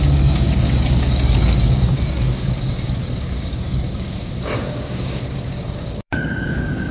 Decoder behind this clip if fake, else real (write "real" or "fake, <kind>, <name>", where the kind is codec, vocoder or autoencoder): fake, codec, DAC